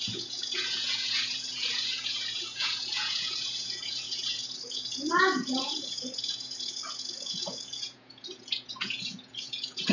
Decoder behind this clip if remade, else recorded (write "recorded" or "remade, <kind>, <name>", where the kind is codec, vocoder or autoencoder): remade, vocoder, Vocos